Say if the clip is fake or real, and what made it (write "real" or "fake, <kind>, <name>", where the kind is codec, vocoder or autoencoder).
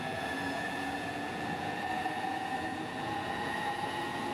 fake, vocoder, Vocos